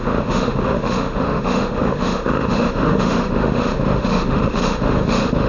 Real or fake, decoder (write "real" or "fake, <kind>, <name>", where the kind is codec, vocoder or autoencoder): fake, autoencoder, DAC-VAE